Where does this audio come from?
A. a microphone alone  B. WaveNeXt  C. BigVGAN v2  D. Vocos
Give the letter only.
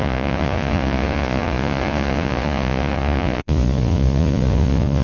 D